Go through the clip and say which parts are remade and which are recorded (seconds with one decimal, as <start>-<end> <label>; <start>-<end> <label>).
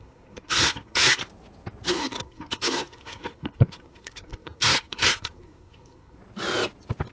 0.0-1.2 remade; 1.2-1.9 recorded; 1.9-6.2 remade; 6.2-7.1 recorded